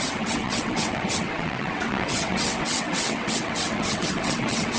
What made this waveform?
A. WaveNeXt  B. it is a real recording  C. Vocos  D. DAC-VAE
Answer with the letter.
A